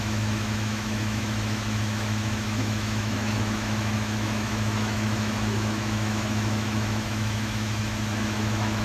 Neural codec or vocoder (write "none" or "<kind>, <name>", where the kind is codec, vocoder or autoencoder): autoencoder, DAC-VAE